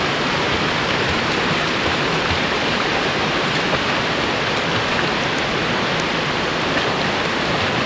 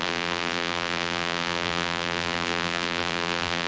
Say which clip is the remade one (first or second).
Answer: second